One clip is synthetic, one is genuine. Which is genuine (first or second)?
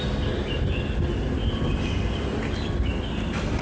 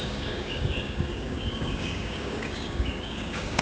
first